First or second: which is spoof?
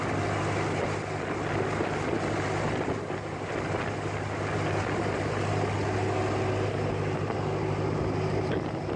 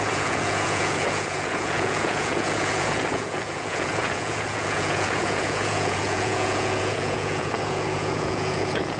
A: second